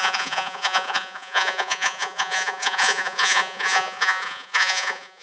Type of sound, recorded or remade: remade